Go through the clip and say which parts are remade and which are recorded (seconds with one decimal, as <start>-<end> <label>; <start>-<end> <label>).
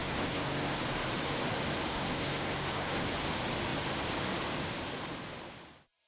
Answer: 0.0-0.8 remade; 0.8-1.9 recorded; 1.9-3.1 remade; 3.1-6.1 recorded